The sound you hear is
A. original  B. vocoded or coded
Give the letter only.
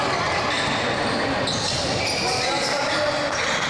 A